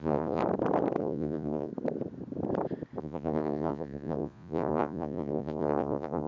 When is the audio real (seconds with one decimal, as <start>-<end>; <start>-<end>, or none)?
0.4-1.0; 1.7-3.0